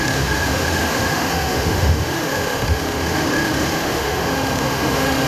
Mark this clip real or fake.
fake